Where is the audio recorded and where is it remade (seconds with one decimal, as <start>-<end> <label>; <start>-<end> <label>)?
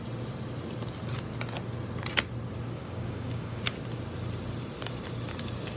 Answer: 0.0-2.8 recorded; 2.8-3.6 remade; 3.6-5.8 recorded